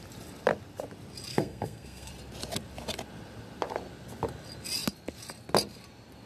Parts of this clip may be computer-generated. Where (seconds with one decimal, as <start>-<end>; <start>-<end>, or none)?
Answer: 1.3-2.1